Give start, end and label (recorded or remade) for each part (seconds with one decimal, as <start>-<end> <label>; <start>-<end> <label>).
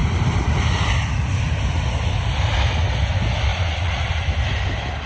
0.0-3.5 recorded; 3.5-4.3 remade; 4.3-5.1 recorded